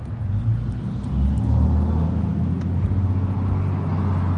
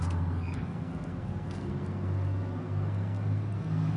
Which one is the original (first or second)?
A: first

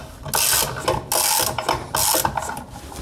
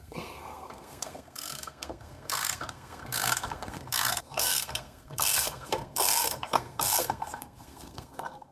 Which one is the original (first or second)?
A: first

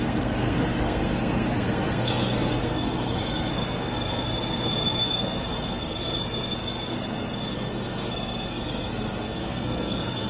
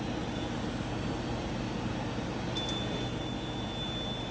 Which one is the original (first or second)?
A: second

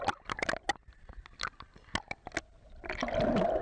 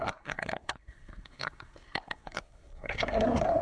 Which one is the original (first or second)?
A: first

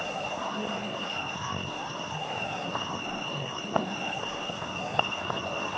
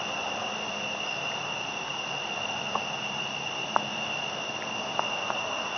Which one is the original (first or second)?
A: second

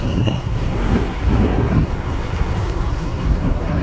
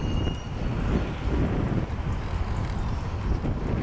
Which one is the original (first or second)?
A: second